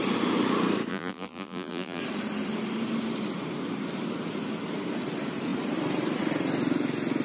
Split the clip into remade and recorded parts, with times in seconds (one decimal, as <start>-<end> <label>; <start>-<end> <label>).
0.0-0.9 recorded; 0.9-2.0 remade; 2.0-7.2 recorded